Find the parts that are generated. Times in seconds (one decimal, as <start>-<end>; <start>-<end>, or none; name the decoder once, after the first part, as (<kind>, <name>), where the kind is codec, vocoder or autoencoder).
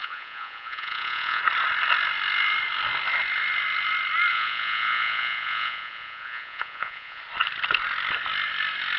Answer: 0.0-1.4 (vocoder, Vocos); 4.3-7.2